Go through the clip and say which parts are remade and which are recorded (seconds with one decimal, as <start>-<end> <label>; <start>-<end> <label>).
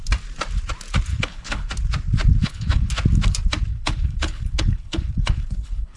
0.0-1.1 recorded; 1.1-1.7 remade; 1.7-2.4 recorded; 2.4-2.9 remade; 2.9-3.7 recorded; 3.7-6.0 remade